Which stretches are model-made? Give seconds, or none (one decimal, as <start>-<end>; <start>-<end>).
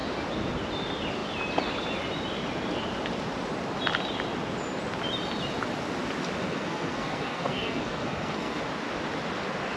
6.4-8.6